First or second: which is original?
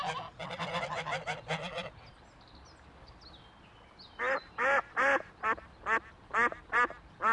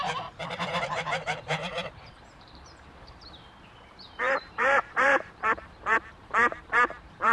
first